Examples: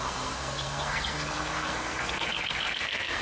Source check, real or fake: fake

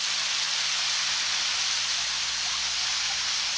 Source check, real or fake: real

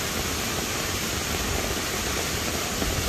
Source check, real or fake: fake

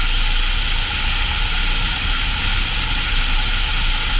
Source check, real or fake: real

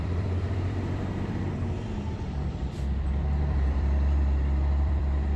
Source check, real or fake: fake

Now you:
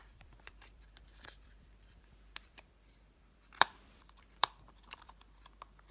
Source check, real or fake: fake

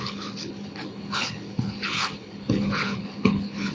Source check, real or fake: fake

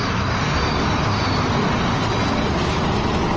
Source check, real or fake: real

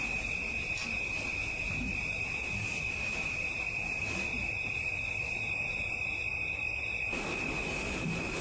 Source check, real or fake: real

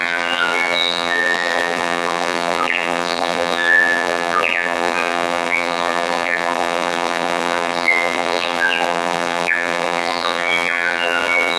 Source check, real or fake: fake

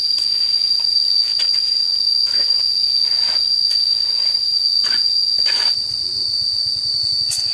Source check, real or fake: real